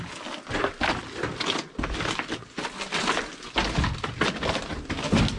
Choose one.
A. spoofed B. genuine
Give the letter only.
B